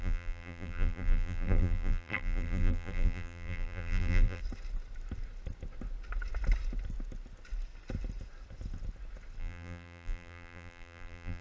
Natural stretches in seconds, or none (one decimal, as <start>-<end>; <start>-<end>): 4.4-9.4